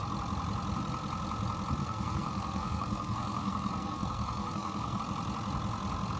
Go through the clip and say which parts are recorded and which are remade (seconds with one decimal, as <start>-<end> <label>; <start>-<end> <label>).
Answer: 0.0-1.8 recorded; 1.8-5.0 remade; 5.0-6.2 recorded